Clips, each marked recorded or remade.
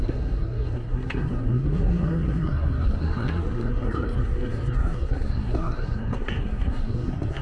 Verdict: remade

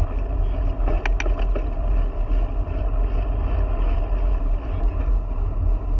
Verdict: recorded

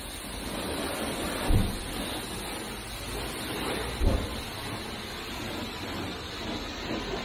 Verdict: recorded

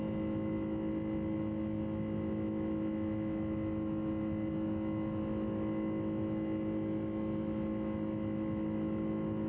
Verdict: recorded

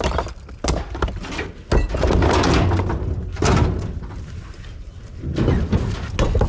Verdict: recorded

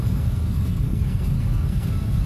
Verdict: remade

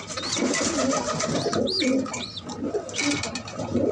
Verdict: recorded